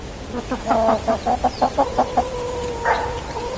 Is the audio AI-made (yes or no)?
no